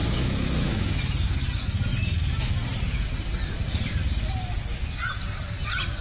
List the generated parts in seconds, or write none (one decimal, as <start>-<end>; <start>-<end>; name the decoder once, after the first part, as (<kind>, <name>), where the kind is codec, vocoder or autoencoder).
0.0-1.0 (autoencoder, DAC-VAE)